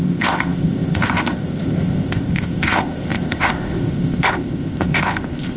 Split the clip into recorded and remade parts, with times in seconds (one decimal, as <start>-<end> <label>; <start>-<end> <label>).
0.0-5.6 remade